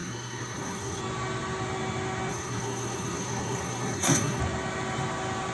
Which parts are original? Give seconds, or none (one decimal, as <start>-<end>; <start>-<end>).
1.0-2.3; 4.4-5.5